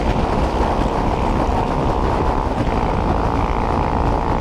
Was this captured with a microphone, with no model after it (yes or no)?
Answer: yes